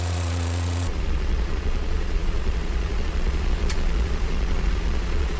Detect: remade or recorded remade